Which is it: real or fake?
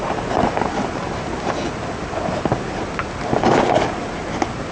real